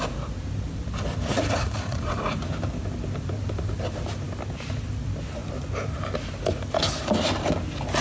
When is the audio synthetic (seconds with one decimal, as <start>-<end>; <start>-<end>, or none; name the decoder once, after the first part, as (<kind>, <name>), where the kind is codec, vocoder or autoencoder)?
1.3-2.4 (vocoder, Vocos)